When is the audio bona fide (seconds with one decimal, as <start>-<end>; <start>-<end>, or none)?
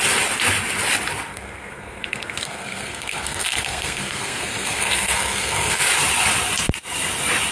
0.0-1.3; 5.8-7.5